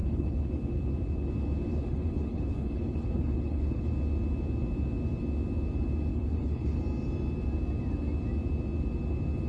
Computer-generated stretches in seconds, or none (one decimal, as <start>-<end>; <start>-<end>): 0.0-0.5; 1.7-3.9; 6.1-6.8